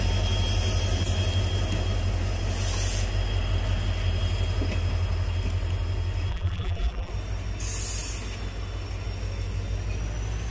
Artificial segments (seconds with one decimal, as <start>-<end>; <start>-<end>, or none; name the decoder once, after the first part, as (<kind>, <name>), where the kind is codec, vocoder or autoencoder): 6.3-7.1 (vocoder, BigVGAN v2)